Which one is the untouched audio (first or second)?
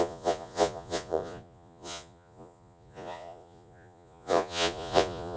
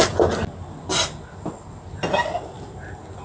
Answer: second